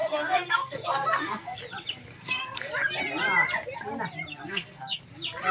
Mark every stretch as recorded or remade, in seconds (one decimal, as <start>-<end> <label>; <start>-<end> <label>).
0.0-1.6 remade; 1.6-2.1 recorded; 2.1-2.7 remade; 2.7-4.3 recorded; 4.3-5.0 remade; 5.0-5.5 recorded